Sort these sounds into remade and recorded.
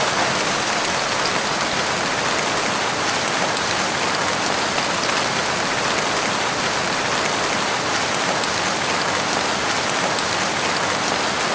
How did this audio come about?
recorded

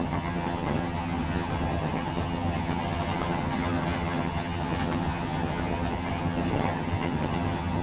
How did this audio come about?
remade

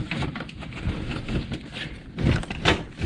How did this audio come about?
recorded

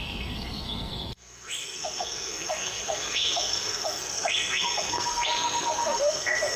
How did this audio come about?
remade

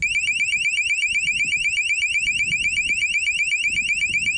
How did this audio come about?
recorded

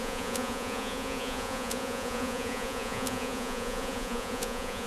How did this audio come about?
remade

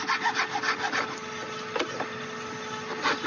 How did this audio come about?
recorded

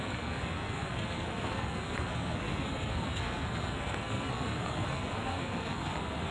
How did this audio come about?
remade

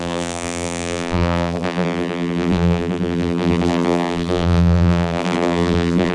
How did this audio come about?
remade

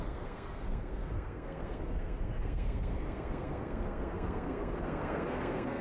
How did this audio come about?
remade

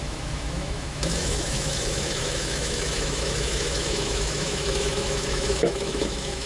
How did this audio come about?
remade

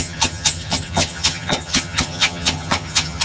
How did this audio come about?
remade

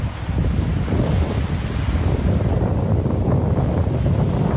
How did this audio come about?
recorded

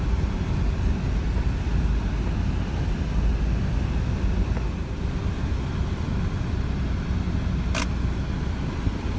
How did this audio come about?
recorded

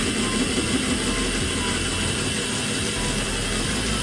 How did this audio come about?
recorded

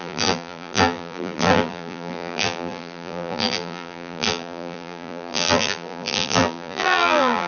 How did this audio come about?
remade